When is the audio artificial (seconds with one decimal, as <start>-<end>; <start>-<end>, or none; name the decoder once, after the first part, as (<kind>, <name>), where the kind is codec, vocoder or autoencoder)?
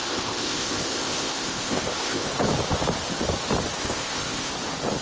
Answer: 0.0-2.3 (codec, ZipCodec); 3.8-4.5